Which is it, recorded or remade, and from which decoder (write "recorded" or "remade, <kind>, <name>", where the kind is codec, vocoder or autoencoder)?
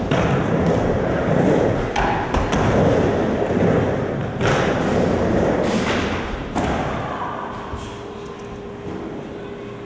recorded